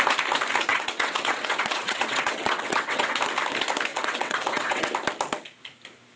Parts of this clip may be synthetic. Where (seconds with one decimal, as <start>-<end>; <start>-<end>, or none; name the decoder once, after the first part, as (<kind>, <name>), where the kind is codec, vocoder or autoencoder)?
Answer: 0.7-3.2 (vocoder, WaveNeXt); 3.9-4.9